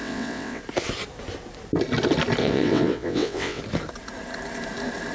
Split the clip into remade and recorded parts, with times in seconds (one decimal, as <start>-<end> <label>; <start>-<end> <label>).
0.0-0.6 remade; 0.6-2.4 recorded; 2.4-3.6 remade; 3.6-5.1 recorded